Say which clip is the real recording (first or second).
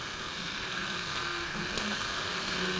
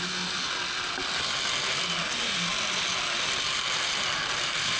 second